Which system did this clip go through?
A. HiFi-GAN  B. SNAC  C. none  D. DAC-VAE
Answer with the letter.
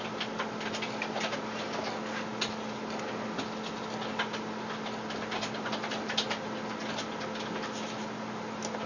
C